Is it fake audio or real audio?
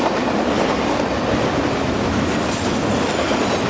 real